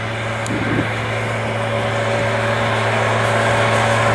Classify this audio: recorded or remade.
recorded